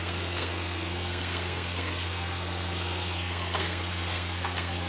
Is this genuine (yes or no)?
no